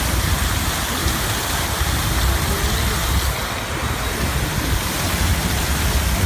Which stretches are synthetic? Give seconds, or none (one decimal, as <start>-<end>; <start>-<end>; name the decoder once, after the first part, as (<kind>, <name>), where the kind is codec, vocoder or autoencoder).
1.0-1.9 (vocoder, BigVGAN v2); 4.5-5.6